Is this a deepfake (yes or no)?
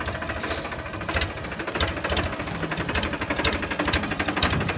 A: no